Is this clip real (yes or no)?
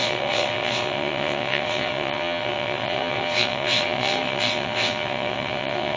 no